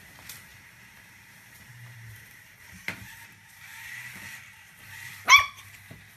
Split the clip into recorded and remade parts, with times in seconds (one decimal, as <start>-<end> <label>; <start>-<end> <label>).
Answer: 0.0-0.5 recorded; 0.5-2.7 remade; 2.7-6.2 recorded